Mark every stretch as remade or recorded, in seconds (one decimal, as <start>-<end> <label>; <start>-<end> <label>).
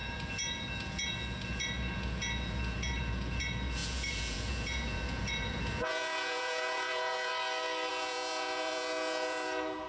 0.0-7.3 remade; 7.3-7.9 recorded; 7.9-9.9 remade